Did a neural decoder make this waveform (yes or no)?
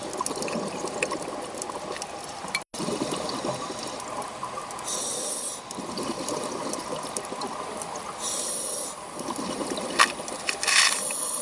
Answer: no